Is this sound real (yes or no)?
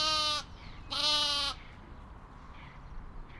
yes